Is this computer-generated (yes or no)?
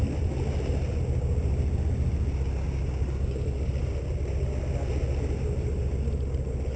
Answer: no